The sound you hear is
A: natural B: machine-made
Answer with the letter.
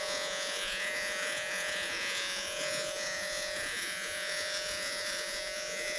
B